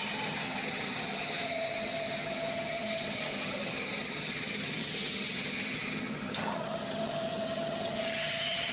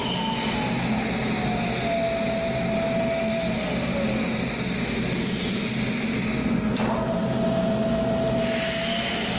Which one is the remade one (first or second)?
first